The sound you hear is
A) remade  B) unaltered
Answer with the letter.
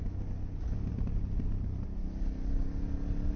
B